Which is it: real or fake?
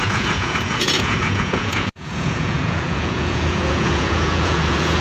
fake